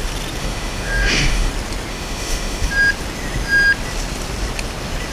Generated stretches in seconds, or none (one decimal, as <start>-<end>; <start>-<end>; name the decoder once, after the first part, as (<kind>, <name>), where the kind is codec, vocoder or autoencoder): 0.4-1.5 (autoencoder, DAC-VAE); 1.9-2.7